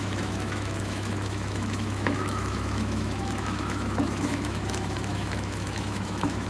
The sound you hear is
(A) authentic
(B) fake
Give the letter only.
B